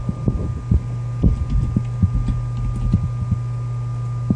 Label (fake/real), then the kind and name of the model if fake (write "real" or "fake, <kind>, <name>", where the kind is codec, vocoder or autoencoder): real